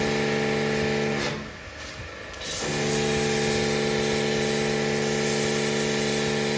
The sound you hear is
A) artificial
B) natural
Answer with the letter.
B